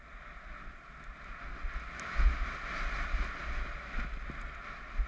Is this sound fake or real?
real